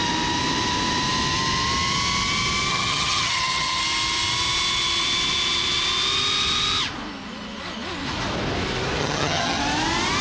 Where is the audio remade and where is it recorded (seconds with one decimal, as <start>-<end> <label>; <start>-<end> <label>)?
0.0-2.7 recorded; 2.7-3.8 remade; 3.8-9.0 recorded; 9.0-9.6 remade; 9.6-10.2 recorded